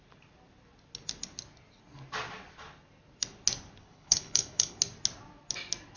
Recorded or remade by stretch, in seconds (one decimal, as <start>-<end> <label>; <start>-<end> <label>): 0.0-3.8 recorded; 3.8-4.8 remade; 4.8-6.0 recorded